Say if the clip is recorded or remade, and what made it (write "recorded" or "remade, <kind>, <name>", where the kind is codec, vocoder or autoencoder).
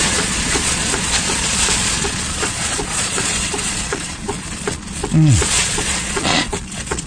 remade, vocoder, Vocos